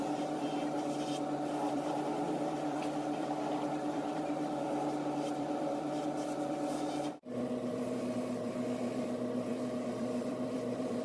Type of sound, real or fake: fake